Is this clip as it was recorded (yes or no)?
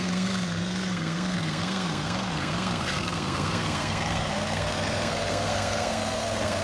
no